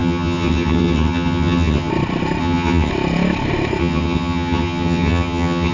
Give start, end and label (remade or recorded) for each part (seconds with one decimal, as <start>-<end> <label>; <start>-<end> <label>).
0.0-1.9 remade; 1.9-2.4 recorded; 2.4-2.9 remade; 2.9-3.8 recorded; 3.8-5.7 remade